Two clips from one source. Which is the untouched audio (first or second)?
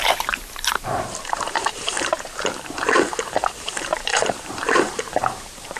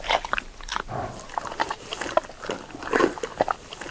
second